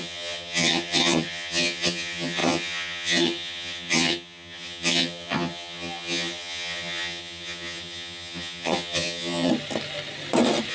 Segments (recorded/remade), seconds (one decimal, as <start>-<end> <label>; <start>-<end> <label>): 0.0-9.5 remade; 9.5-10.7 recorded